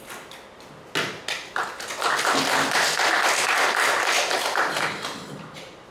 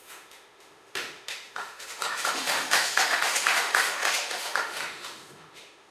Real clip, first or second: first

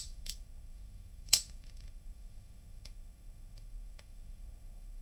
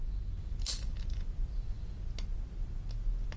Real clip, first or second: second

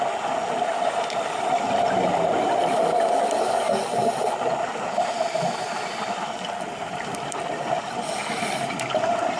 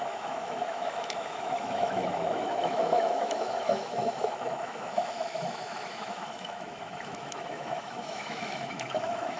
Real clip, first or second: first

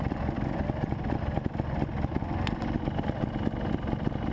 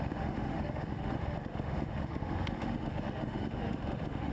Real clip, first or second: first